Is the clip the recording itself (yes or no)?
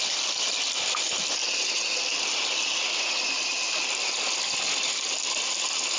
yes